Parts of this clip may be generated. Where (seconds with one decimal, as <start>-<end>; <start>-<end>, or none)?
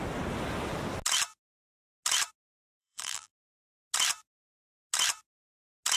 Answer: 2.8-3.3